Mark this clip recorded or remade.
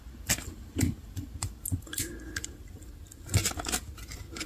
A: recorded